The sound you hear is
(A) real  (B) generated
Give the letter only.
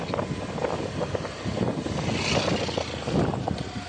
A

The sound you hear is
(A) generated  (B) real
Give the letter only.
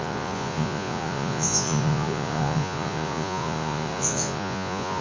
A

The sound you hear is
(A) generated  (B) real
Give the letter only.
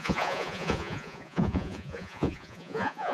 A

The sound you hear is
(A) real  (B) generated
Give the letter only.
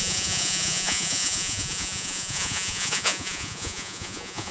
B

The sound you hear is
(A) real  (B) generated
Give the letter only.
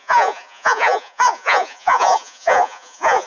B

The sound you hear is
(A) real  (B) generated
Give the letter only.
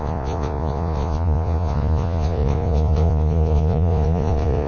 B